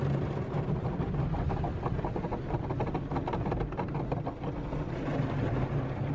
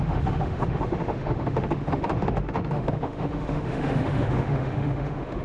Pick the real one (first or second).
first